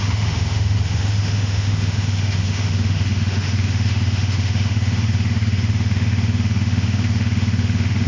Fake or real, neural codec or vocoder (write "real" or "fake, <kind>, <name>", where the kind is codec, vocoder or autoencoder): fake, autoencoder, DAC-VAE